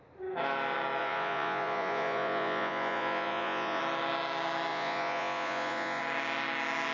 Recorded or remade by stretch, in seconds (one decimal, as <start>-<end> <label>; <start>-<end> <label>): 0.0-1.0 recorded; 1.0-3.8 remade; 3.8-4.7 recorded; 4.7-6.0 remade; 6.0-6.9 recorded